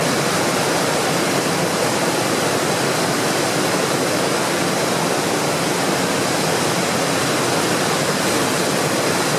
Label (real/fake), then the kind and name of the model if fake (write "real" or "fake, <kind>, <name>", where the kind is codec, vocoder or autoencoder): real